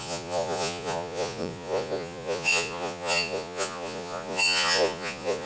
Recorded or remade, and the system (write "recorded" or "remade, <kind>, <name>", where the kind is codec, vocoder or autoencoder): remade, vocoder, Vocos